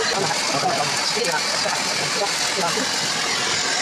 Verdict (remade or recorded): recorded